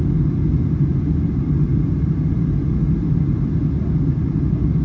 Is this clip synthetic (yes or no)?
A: no